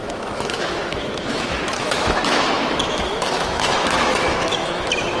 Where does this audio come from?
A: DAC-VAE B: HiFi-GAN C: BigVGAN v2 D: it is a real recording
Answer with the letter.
A